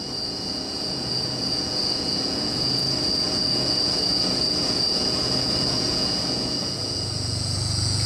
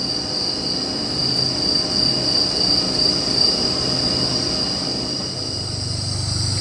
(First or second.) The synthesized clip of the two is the first